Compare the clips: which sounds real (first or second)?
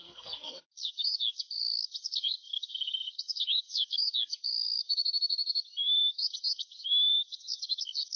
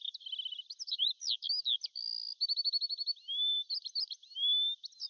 second